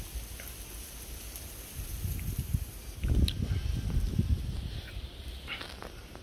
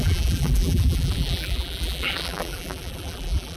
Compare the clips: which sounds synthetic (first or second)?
second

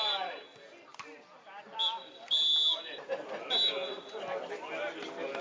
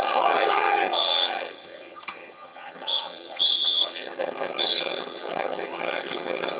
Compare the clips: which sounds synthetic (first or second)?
second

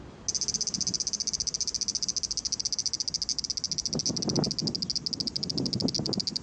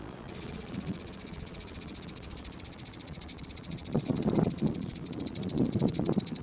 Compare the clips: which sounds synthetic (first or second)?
second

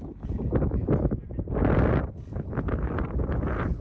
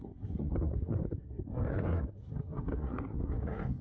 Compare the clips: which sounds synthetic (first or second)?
second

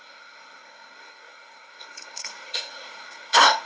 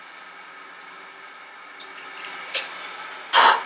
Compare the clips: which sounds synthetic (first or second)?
first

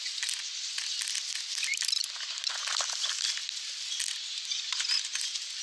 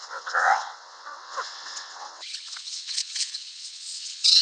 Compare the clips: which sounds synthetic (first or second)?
second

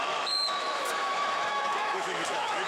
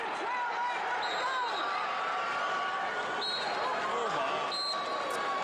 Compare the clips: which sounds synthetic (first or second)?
first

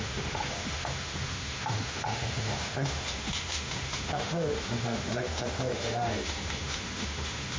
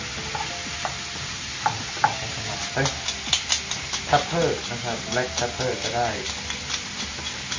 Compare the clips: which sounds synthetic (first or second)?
first